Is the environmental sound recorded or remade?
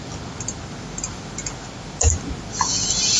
recorded